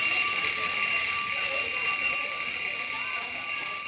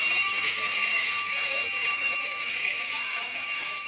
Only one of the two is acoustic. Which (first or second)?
first